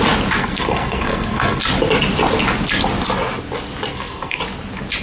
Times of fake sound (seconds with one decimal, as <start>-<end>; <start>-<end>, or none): 0.4-1.6; 3.9-4.4